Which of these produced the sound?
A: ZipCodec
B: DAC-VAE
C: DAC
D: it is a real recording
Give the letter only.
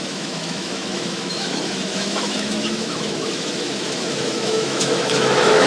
B